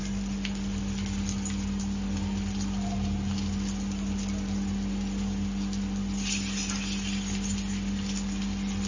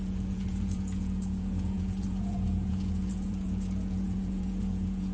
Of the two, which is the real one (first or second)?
first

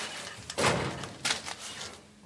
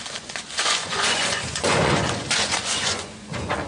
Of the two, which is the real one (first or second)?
first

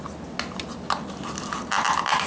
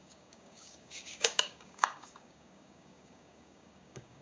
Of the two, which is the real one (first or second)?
first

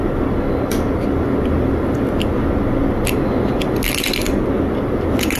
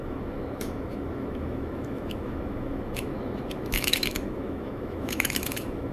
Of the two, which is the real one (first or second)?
first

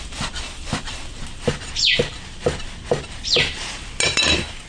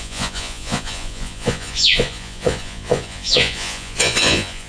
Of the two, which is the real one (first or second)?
first